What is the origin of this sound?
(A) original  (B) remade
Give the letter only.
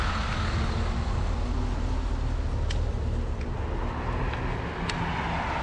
A